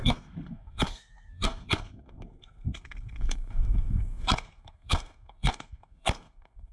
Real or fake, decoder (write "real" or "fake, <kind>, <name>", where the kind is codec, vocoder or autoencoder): fake, codec, SNAC